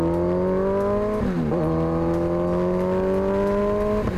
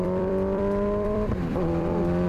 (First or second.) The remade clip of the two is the second